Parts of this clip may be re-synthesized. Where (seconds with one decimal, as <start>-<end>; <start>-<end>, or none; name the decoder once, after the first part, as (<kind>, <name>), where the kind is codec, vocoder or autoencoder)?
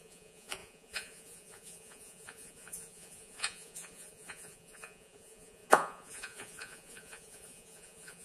0.0-8.2 (vocoder, Vocos)